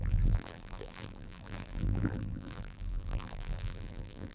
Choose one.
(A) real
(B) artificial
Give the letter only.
B